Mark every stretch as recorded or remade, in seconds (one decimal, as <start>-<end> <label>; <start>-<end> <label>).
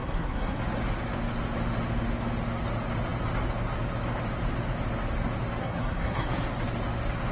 0.0-0.6 remade; 0.6-5.6 recorded; 5.6-6.3 remade; 6.3-7.3 recorded